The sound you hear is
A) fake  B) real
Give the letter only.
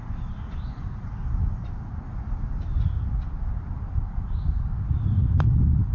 B